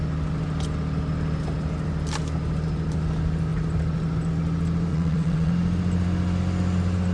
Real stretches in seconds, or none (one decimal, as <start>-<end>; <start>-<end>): 0.0-4.9; 5.5-7.1